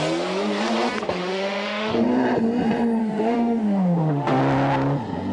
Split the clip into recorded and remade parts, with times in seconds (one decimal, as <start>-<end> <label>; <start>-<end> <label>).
0.0-1.2 recorded; 1.2-1.9 remade; 1.9-3.0 recorded; 3.0-4.4 remade; 4.4-5.3 recorded